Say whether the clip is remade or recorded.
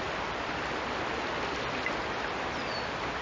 recorded